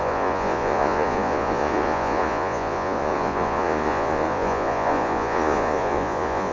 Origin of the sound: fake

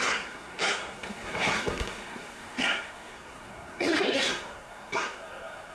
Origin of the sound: fake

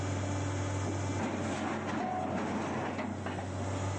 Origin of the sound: real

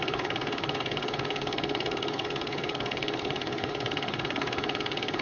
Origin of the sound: fake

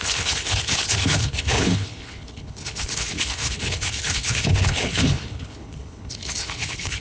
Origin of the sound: fake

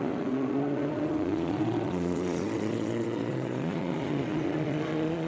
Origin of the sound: fake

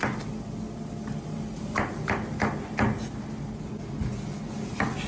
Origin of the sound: real